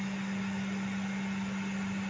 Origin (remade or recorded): recorded